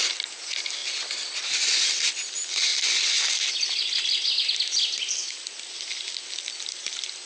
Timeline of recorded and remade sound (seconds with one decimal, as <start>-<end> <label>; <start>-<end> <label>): 0.0-7.3 recorded